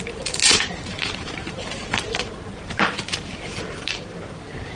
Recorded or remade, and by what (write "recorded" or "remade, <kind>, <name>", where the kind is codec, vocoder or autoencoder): remade, vocoder, BigVGAN v2